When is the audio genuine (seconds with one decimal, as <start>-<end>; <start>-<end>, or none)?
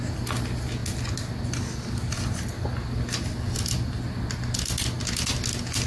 0.0-5.9